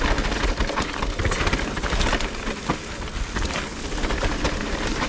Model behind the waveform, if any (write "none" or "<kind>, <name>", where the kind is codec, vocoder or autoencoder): none